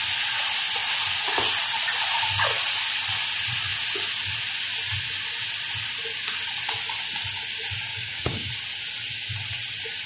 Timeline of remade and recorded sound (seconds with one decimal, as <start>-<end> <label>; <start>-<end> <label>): 0.0-7.9 recorded; 7.9-8.5 remade; 8.5-10.1 recorded